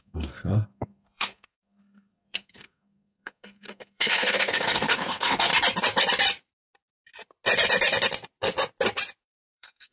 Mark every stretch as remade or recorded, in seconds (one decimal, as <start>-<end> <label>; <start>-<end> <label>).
0.0-5.5 remade; 5.5-9.2 recorded; 9.2-9.9 remade